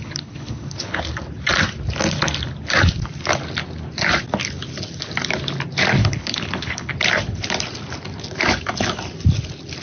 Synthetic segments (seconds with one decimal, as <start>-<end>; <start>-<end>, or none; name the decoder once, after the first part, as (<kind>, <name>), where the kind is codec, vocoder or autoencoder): 0.0-1.0 (codec, HILCodec); 6.0-6.9